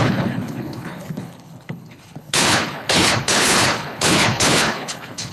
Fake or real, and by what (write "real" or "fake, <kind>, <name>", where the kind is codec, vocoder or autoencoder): fake, codec, HILCodec